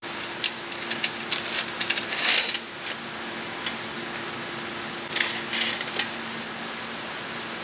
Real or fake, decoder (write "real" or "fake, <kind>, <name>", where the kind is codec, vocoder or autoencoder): real